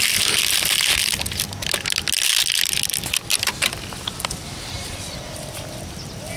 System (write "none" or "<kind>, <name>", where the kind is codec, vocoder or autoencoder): none